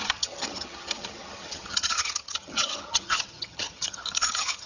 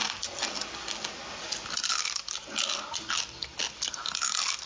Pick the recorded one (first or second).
second